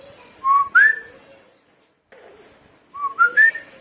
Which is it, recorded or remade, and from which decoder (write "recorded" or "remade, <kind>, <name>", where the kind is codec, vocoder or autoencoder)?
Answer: recorded